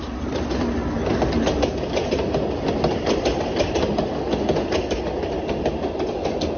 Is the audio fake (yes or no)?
no